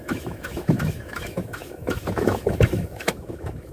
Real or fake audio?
fake